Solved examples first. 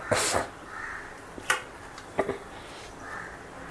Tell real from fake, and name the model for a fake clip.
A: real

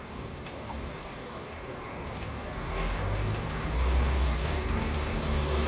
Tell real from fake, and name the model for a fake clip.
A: fake, codec, DAC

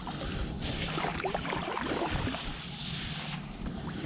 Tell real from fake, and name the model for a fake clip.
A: fake, vocoder, BigVGAN v2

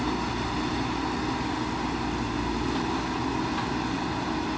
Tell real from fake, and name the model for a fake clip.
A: real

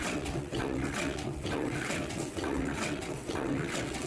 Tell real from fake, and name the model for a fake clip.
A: fake, vocoder, WaveNeXt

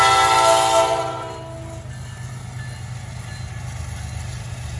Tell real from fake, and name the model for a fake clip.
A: real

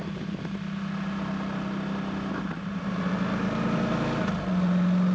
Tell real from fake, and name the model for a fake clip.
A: real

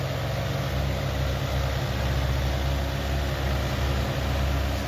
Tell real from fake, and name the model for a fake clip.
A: real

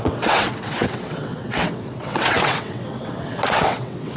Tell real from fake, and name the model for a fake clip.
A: fake, vocoder, WaveNeXt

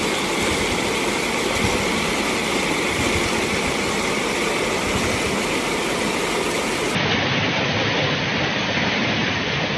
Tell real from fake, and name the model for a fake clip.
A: real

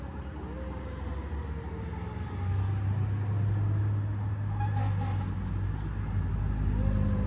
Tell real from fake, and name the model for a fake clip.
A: real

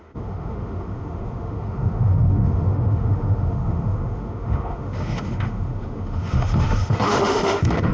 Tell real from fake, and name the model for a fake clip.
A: fake, autoencoder, DAC-VAE